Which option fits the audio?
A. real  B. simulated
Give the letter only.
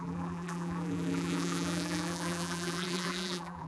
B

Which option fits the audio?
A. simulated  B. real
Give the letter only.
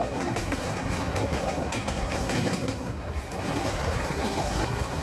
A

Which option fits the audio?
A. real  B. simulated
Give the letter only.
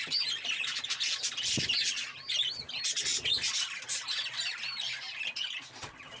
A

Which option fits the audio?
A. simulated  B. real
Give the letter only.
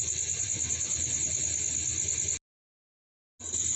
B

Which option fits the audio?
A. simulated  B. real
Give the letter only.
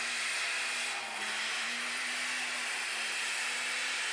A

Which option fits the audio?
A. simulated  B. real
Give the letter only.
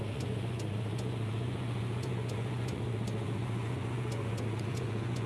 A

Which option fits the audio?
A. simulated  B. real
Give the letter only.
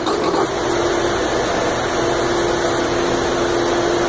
B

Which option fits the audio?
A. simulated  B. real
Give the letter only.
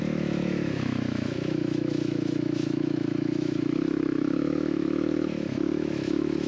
A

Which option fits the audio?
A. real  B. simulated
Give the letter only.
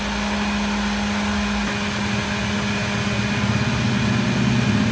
A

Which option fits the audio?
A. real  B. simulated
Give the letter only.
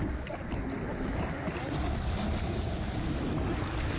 A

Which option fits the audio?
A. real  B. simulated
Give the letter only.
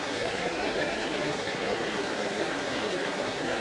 B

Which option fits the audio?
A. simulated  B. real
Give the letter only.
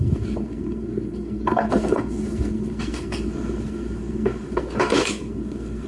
A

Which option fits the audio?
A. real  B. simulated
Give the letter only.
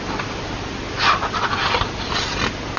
A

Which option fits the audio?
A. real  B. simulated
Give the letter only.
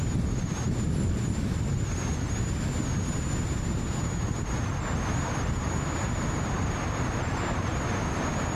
A